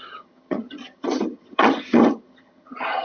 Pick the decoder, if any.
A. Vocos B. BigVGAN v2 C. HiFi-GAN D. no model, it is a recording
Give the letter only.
C